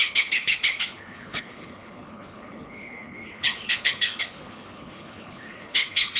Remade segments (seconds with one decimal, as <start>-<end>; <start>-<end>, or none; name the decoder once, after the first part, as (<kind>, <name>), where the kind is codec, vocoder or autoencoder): 0.0-6.2 (codec, HILCodec)